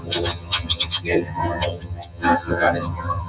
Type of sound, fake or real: fake